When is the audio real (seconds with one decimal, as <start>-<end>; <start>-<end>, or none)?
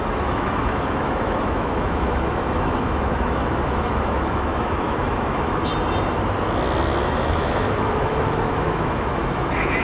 5.7-7.0